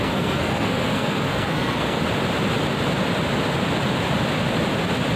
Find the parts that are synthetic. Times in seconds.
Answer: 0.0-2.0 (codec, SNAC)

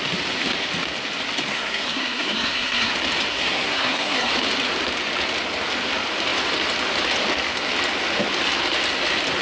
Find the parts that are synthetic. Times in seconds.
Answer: 1.5-2.9 (codec, SNAC); 3.3-4.3